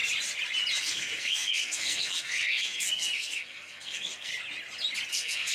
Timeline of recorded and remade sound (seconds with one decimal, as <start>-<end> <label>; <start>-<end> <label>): 0.0-0.8 recorded; 0.8-4.3 remade; 4.3-5.1 recorded; 5.1-5.5 remade